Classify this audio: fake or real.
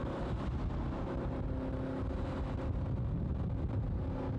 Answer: real